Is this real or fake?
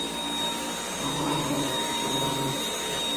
real